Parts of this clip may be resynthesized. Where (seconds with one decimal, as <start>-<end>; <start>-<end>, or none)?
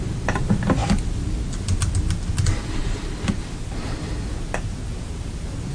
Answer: none